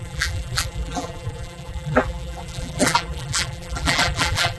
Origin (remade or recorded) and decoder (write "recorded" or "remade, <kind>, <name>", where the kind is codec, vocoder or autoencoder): remade, vocoder, BigVGAN v2